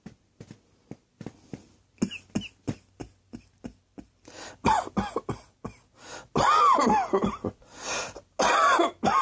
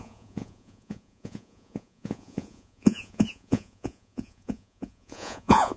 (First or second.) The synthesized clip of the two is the second